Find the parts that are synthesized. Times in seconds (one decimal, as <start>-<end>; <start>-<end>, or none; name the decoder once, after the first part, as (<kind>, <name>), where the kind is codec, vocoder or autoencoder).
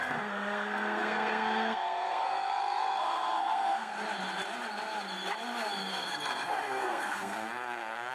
0.0-3.9 (codec, SNAC); 5.9-8.1